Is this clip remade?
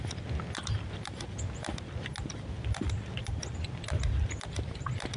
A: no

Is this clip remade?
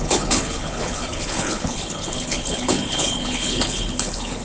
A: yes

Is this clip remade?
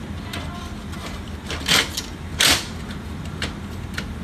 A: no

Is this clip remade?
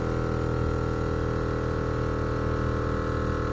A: no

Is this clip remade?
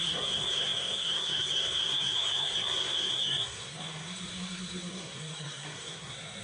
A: yes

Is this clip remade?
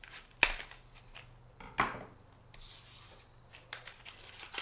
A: no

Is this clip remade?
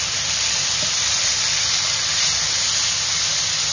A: no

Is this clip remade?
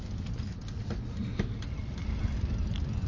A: no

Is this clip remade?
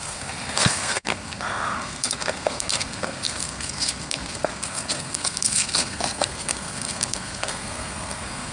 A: yes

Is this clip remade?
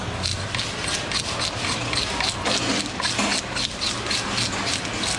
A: no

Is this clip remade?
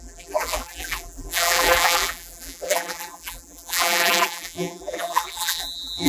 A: yes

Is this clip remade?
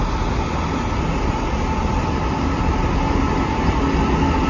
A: no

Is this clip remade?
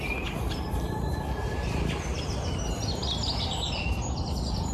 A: no